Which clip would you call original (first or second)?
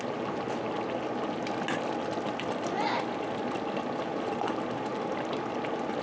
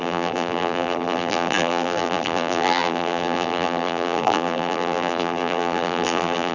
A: first